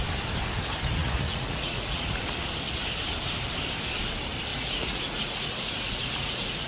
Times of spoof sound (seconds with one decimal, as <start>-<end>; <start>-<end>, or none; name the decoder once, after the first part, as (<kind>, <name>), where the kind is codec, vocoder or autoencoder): 1.0-2.4 (vocoder, Vocos); 4.5-6.7